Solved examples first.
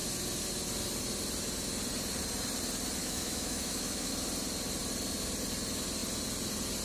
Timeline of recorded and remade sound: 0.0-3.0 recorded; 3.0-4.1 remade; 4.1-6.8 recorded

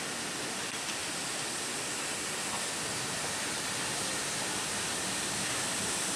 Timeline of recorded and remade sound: 0.0-6.2 recorded

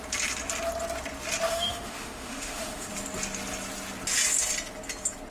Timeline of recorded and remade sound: 0.0-1.5 recorded; 1.5-2.9 remade; 2.9-5.3 recorded

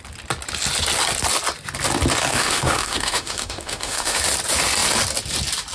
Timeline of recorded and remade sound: 0.0-2.3 recorded; 2.3-4.2 remade; 4.2-5.7 recorded

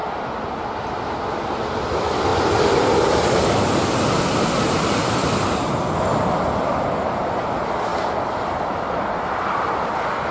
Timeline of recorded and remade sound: 0.0-10.3 recorded

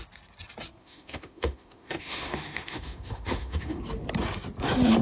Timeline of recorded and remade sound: 0.0-0.8 recorded; 0.8-3.8 remade; 3.8-5.0 recorded

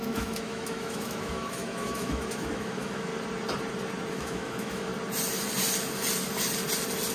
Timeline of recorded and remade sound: 0.0-3.1 remade; 3.1-4.1 recorded; 4.1-4.9 remade; 4.9-7.1 recorded

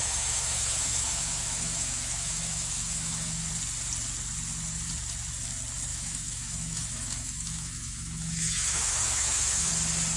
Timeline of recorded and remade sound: 0.0-3.5 remade; 3.5-5.9 recorded; 5.9-9.7 remade; 9.7-10.2 recorded